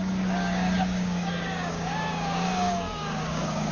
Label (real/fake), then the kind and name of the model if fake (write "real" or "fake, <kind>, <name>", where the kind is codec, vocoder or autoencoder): fake, codec, DAC